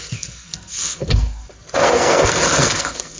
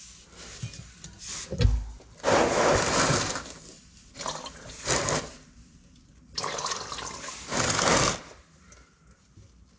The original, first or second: second